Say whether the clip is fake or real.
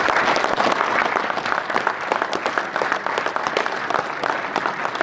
real